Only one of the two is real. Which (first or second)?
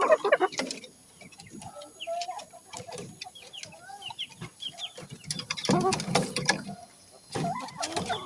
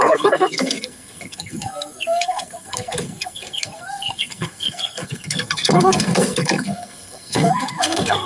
first